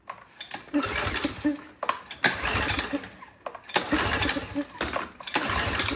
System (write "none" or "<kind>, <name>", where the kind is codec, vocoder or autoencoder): none